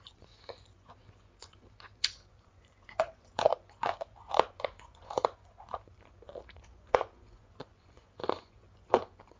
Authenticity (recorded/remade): remade